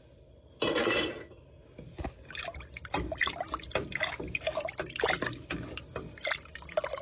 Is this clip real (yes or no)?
yes